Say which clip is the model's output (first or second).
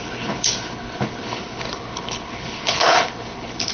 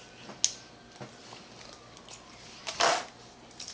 first